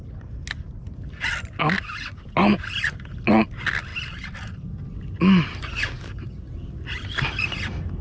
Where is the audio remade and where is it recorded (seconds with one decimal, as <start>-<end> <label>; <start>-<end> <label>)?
0.0-8.0 recorded